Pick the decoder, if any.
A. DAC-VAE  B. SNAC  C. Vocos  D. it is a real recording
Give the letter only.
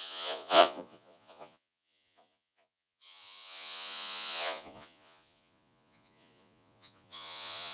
C